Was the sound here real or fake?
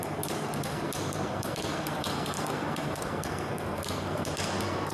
fake